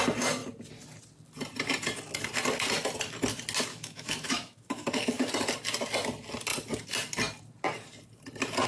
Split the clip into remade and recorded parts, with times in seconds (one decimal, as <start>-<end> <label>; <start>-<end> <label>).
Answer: 0.0-3.7 recorded; 3.7-5.3 remade; 5.3-8.7 recorded